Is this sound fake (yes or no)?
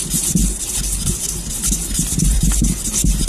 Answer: no